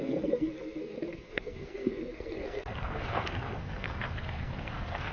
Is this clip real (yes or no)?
no